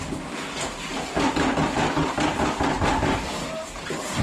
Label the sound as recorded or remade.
recorded